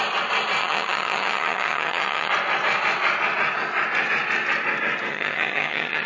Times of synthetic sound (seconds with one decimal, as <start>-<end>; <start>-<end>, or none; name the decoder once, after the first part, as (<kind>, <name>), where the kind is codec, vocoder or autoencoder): 0.6-2.3 (vocoder, HiFi-GAN); 5.1-6.1